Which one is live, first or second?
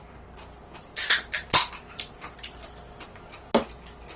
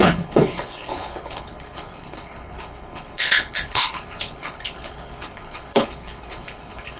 first